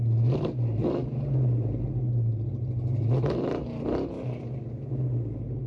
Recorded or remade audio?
recorded